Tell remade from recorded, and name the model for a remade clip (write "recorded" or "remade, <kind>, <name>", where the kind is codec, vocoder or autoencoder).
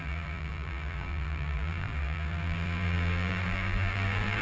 remade, vocoder, BigVGAN v2